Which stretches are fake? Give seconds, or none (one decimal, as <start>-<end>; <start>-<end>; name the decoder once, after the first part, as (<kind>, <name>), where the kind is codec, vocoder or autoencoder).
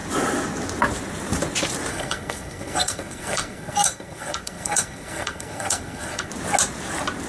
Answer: 1.9-6.3 (codec, SNAC)